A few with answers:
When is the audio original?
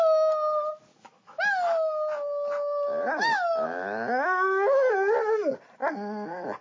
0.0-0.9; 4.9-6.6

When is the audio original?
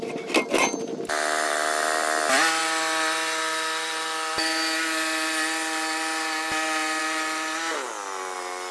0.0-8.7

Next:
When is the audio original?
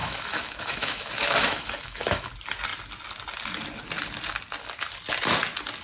2.3-5.8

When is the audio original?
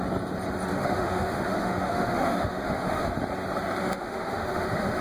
0.0-0.7; 3.1-3.8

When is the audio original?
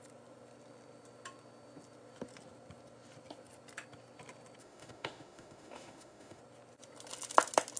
0.0-4.6; 6.4-7.8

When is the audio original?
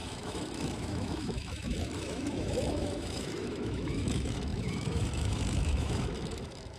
none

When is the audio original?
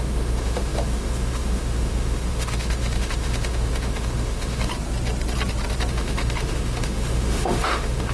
4.7-5.9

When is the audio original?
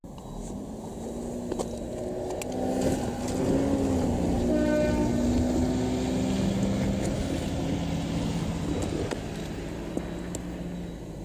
0.0-11.2